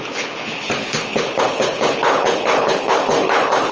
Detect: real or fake fake